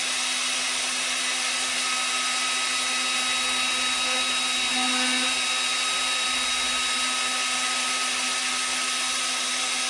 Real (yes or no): yes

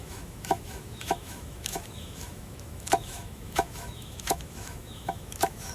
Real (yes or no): no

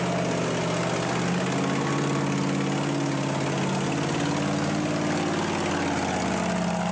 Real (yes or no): yes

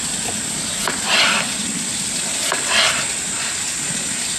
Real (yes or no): yes